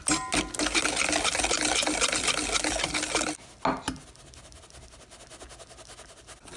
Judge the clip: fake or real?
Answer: real